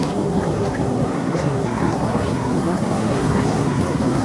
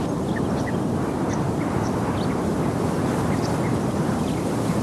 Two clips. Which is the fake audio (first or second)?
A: first